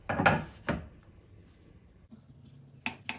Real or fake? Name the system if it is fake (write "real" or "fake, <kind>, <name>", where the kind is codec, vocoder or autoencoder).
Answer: real